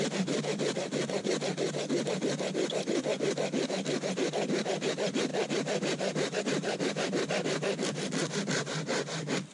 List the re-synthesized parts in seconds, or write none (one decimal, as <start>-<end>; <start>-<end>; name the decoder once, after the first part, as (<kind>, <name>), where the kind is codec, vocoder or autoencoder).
none